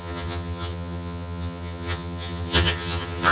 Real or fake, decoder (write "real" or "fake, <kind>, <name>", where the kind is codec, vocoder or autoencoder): fake, vocoder, HiFi-GAN